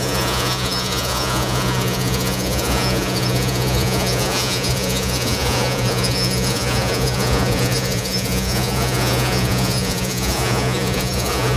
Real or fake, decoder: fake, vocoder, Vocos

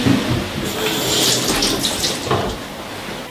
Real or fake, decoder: real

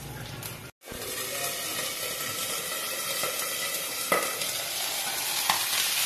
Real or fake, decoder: real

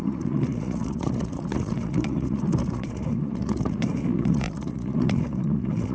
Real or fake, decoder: fake, vocoder, Vocos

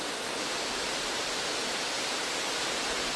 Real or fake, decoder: fake, vocoder, BigVGAN v2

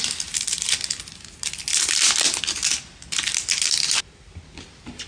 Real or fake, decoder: real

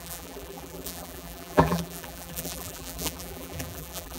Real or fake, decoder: fake, vocoder, BigVGAN v2